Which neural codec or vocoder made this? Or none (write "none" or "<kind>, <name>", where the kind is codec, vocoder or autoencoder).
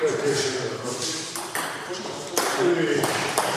vocoder, BigVGAN v2